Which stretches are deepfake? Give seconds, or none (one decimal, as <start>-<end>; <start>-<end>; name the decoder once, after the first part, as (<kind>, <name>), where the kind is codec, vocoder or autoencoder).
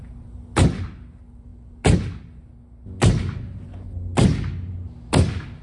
none